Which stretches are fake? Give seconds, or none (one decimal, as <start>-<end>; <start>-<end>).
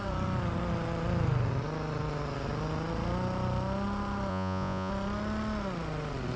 4.3-4.9